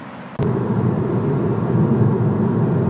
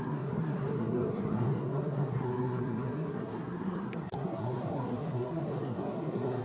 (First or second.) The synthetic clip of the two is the second